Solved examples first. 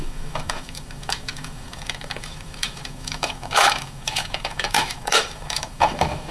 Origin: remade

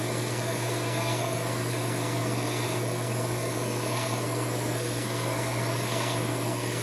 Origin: remade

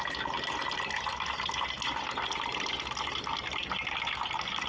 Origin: recorded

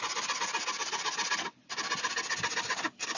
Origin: recorded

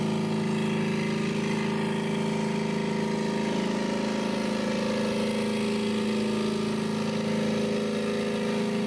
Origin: recorded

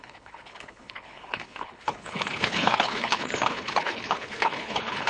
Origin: remade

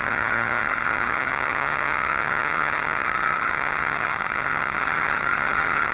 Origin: remade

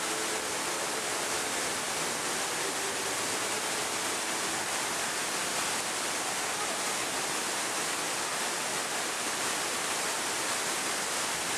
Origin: recorded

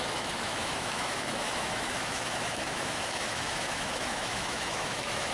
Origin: remade